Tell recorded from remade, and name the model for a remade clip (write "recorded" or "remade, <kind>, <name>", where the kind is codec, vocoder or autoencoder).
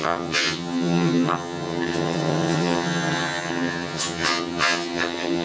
remade, vocoder, HiFi-GAN